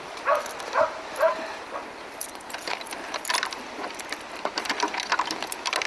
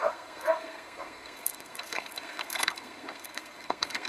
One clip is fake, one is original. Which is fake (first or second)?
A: second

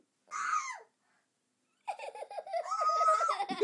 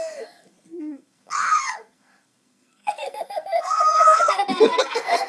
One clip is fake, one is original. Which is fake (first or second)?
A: second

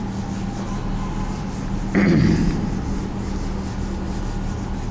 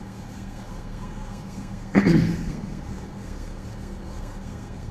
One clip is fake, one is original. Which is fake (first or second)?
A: second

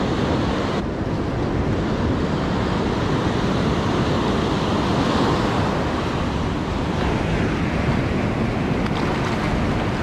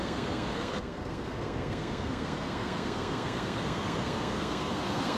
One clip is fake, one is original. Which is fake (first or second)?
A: second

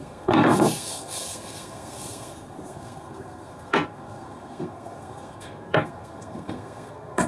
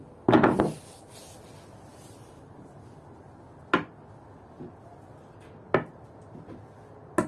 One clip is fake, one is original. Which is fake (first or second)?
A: first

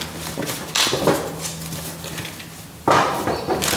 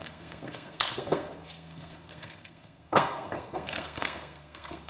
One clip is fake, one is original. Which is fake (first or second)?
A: second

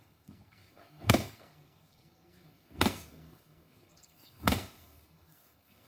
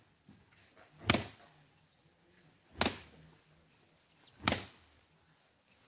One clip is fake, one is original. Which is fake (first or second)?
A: first